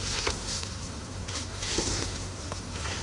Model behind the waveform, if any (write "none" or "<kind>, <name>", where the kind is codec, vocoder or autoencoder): codec, SNAC